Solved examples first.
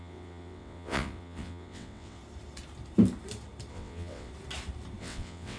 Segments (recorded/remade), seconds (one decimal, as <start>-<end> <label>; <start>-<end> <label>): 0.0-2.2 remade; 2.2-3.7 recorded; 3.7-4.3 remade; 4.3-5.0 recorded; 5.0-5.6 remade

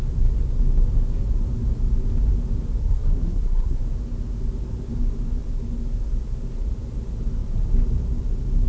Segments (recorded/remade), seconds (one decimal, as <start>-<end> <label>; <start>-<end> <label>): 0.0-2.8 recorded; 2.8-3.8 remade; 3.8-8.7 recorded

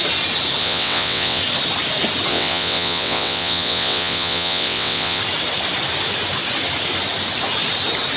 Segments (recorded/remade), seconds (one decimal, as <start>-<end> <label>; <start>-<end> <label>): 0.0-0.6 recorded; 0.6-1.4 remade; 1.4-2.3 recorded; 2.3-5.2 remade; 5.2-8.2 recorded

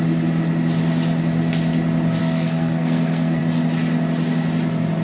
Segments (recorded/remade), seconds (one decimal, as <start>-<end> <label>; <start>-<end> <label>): 0.0-2.2 recorded; 2.2-3.4 remade; 3.4-5.0 recorded